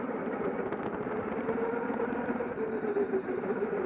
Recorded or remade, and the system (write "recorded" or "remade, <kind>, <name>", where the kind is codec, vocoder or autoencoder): recorded